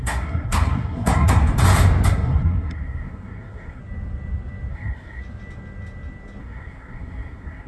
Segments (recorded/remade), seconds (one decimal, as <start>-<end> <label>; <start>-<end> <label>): 0.0-1.4 remade; 1.4-2.1 recorded; 2.1-3.8 remade; 3.8-4.7 recorded; 4.7-5.2 remade; 5.2-6.4 recorded; 6.4-7.7 remade